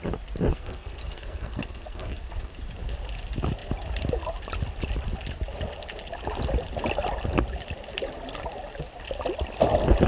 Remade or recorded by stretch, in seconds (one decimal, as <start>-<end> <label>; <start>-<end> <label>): 0.0-0.5 recorded; 0.5-2.5 remade; 2.5-10.1 recorded